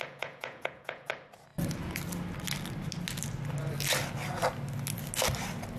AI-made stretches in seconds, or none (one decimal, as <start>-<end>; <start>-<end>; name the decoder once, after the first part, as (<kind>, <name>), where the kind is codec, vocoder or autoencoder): 0.0-1.1 (vocoder, Vocos)